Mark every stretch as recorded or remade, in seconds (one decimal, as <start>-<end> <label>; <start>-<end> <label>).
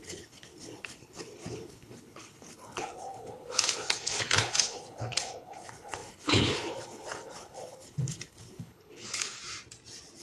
0.0-9.4 remade; 9.4-10.2 recorded